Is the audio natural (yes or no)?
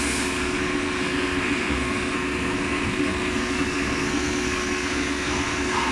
no